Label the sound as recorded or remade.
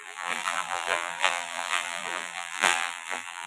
remade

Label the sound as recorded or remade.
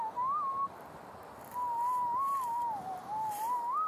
remade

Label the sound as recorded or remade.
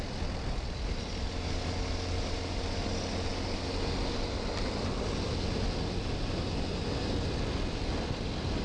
recorded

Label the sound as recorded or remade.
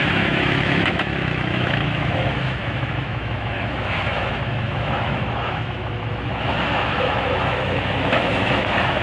remade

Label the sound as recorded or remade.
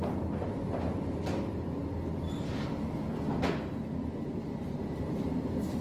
recorded